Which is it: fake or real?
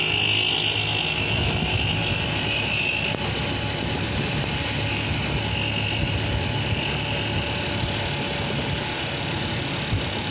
real